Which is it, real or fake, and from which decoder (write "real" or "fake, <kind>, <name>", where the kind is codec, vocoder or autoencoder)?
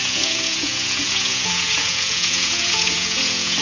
fake, vocoder, Vocos